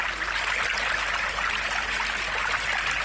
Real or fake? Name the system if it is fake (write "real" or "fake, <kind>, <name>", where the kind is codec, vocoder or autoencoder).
real